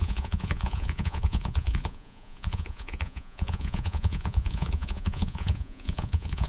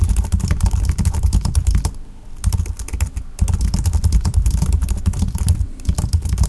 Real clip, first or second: second